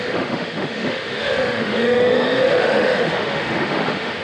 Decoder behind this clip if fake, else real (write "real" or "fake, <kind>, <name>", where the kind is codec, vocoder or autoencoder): fake, autoencoder, DAC-VAE